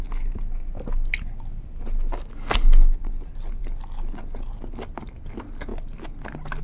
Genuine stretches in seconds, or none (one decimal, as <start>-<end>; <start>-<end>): 0.0-6.6